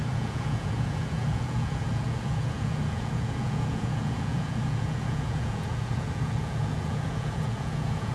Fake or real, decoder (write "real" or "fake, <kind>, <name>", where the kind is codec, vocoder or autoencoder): fake, vocoder, Vocos